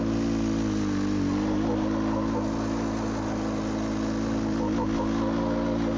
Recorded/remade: recorded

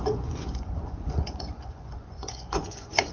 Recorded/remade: remade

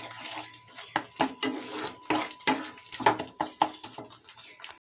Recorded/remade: recorded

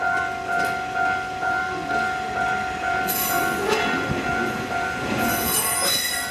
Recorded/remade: recorded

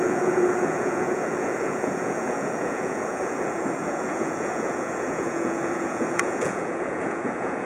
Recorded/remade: remade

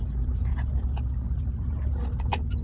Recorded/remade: recorded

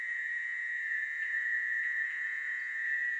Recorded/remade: remade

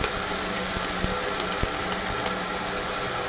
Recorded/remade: recorded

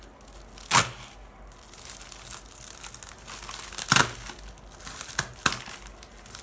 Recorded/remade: recorded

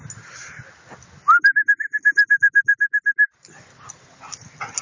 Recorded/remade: recorded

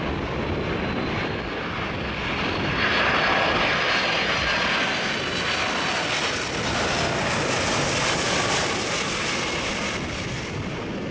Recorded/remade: recorded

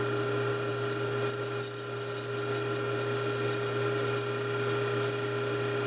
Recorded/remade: recorded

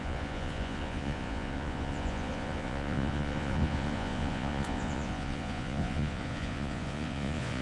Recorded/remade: remade